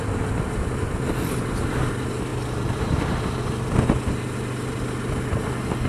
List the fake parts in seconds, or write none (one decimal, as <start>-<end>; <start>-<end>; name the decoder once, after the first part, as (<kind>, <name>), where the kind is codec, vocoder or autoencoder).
2.3-3.2 (vocoder, BigVGAN v2)